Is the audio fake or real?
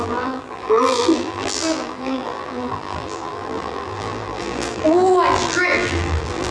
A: fake